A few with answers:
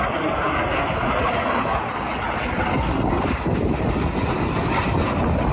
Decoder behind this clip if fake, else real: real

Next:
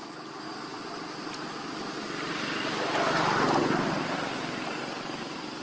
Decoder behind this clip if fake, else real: real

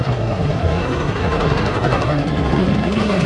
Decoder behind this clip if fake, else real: fake, codec, SNAC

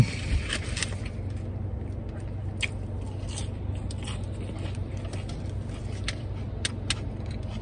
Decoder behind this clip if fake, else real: real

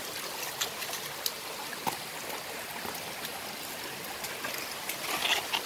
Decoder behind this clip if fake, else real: real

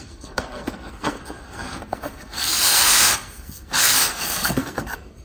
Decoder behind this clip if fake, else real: fake, codec, SNAC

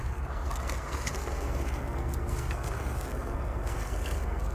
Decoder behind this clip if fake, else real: fake, codec, SNAC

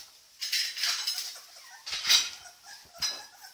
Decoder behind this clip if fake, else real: real